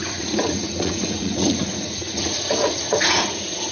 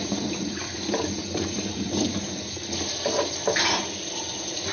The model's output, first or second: first